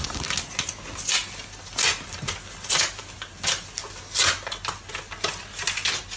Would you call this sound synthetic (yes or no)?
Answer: no